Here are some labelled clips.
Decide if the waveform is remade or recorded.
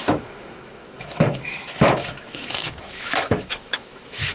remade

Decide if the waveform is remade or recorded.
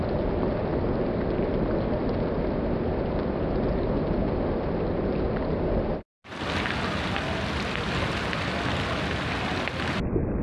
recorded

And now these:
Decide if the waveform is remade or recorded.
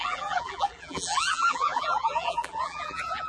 remade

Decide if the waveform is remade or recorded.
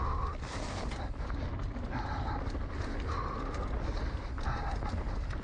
recorded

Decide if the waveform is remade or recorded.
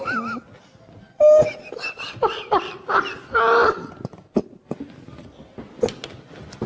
recorded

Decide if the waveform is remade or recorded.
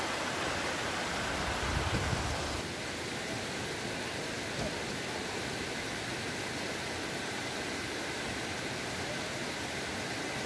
recorded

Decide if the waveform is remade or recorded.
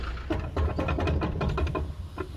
recorded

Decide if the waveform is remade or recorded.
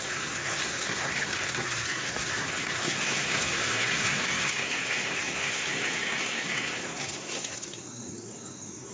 remade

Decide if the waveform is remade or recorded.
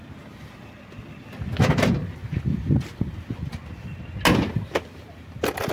recorded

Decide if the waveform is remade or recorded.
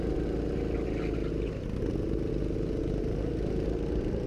recorded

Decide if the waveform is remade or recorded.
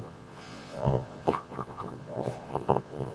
remade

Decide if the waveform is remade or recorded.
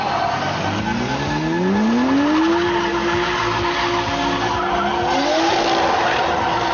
recorded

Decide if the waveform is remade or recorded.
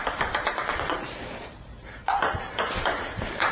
remade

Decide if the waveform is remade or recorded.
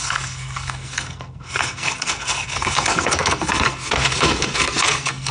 remade